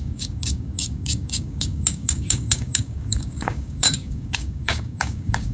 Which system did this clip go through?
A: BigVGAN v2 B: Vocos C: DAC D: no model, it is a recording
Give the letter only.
C